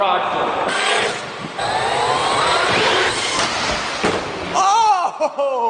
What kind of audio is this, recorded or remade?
recorded